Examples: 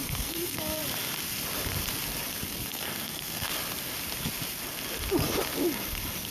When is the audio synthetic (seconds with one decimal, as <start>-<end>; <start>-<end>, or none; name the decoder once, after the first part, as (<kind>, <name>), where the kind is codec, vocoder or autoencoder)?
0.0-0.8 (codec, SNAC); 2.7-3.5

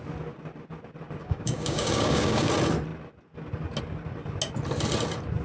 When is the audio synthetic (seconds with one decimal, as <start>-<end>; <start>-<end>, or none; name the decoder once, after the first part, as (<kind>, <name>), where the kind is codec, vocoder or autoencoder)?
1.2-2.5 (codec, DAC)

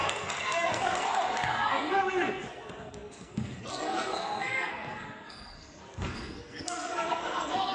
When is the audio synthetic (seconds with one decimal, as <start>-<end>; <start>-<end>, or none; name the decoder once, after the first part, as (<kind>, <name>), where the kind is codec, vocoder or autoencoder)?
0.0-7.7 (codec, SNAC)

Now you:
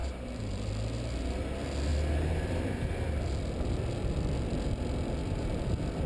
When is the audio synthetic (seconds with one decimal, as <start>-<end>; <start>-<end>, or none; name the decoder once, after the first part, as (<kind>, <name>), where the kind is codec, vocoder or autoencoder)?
0.0-0.7 (vocoder, BigVGAN v2); 1.9-2.8; 5.2-6.1

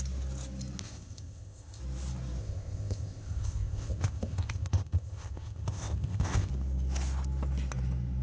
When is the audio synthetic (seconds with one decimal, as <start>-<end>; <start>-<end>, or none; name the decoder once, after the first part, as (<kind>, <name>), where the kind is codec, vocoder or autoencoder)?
0.8-1.8 (codec, ZipCodec); 2.4-6.5